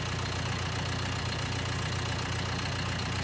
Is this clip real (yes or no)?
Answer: yes